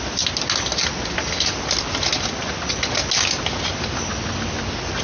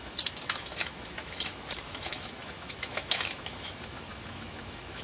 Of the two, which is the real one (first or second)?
first